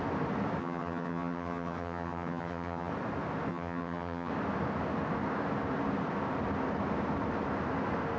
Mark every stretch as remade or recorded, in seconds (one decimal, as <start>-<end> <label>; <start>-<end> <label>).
0.0-0.6 recorded; 0.6-2.9 remade; 2.9-3.5 recorded; 3.5-4.3 remade; 4.3-8.2 recorded